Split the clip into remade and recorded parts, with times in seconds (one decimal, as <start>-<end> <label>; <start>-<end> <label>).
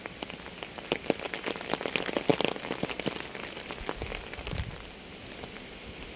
0.0-6.2 recorded